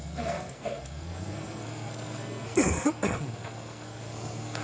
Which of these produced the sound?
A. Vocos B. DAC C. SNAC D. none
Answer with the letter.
C